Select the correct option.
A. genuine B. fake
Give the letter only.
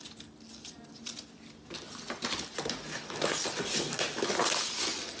A